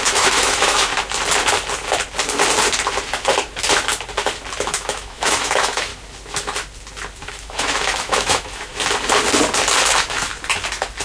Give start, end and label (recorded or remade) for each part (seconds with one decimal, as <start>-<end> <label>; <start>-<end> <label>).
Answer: 0.0-0.9 remade; 0.9-4.6 recorded; 4.6-5.9 remade; 5.9-7.3 recorded; 7.3-8.7 remade; 8.7-9.9 recorded; 9.9-10.3 remade; 10.3-11.0 recorded